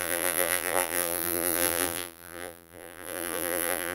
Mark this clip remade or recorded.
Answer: remade